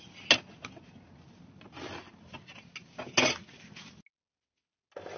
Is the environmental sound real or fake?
real